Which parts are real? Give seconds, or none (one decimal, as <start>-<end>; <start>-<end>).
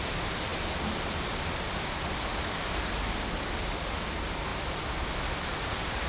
0.0-4.5